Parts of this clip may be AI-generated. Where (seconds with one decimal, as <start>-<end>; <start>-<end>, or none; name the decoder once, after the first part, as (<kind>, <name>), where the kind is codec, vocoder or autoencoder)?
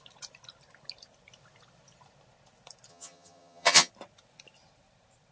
2.9-3.9 (vocoder, HiFi-GAN)